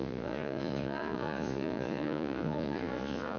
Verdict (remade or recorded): remade